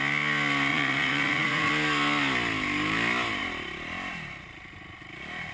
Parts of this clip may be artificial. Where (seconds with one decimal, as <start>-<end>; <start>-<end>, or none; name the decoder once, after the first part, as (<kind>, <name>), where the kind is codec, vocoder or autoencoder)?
0.7-1.7 (vocoder, Vocos)

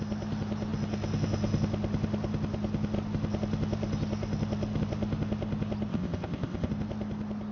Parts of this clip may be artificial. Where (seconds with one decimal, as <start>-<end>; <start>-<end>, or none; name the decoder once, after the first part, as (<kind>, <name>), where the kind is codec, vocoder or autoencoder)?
5.9-6.7 (codec, ZipCodec)

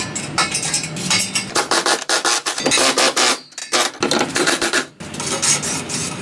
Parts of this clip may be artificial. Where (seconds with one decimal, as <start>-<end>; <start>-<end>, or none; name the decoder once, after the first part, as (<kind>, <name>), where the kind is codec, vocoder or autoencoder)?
none